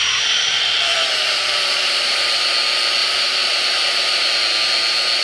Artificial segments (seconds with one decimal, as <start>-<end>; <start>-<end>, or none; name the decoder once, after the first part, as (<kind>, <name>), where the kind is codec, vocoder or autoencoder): 0.9-2.2 (vocoder, BigVGAN v2); 3.0-4.3